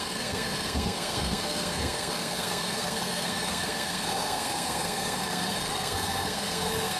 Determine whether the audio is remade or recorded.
remade